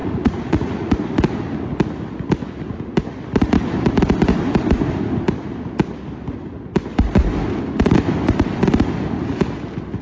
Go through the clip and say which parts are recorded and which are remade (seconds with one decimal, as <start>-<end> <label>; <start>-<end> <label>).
0.0-0.9 remade; 0.9-10.0 recorded